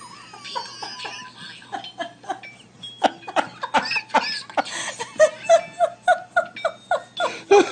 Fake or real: real